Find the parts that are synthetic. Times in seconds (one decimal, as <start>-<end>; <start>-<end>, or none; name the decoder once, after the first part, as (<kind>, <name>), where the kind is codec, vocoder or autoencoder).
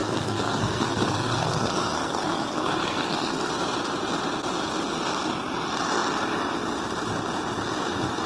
0.0-3.5 (codec, SNAC)